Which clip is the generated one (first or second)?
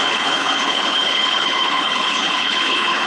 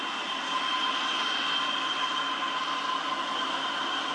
first